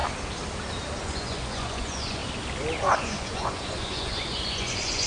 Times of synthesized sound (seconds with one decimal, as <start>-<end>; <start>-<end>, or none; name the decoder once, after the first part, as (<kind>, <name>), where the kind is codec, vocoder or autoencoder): 1.0-2.2 (vocoder, Vocos); 2.8-5.1